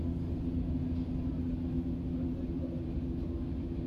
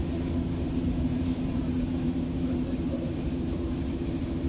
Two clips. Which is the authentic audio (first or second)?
first